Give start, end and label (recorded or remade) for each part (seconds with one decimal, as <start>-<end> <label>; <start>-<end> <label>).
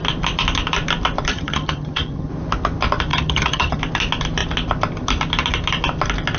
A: 0.0-1.3 recorded; 1.3-2.3 remade; 2.3-3.1 recorded; 3.1-3.8 remade; 3.8-6.4 recorded